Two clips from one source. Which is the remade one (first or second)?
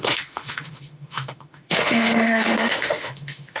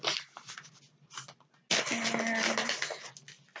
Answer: first